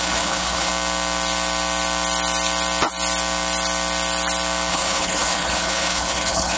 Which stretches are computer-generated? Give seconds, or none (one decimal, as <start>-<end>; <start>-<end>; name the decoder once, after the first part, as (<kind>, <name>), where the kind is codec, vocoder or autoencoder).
0.0-0.7 (codec, HILCodec); 4.7-6.6